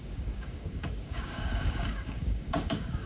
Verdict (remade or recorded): remade